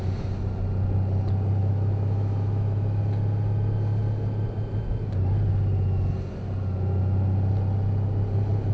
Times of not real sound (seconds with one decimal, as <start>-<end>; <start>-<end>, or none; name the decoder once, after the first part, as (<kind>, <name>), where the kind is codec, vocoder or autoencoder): 1.6-3.0 (autoencoder, DAC-VAE)